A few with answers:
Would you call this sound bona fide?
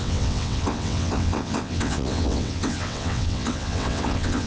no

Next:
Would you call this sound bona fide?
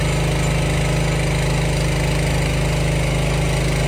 yes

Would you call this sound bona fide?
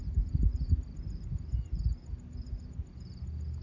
yes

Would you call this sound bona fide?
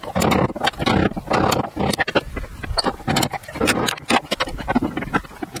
yes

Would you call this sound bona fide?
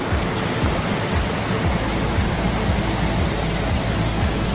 yes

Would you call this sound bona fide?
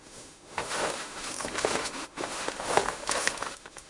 no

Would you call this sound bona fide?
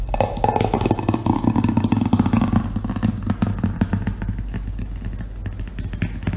yes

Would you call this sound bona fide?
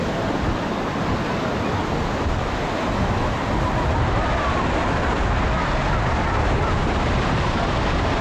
yes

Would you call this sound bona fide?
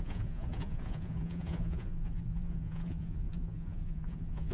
no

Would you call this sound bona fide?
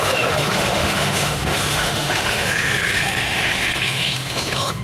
no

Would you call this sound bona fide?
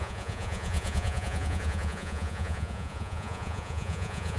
no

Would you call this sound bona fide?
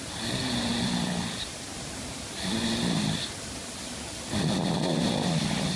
yes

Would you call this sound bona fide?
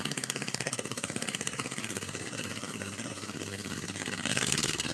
no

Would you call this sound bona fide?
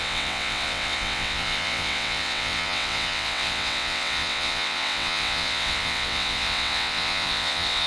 no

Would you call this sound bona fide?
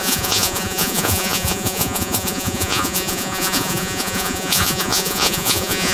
no